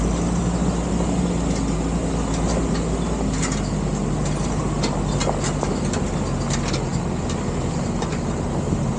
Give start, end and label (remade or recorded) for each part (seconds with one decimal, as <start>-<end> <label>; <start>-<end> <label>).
0.0-9.0 recorded